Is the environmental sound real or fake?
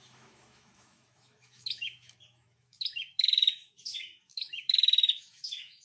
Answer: fake